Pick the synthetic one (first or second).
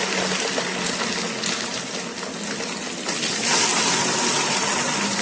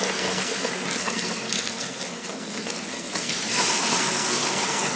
second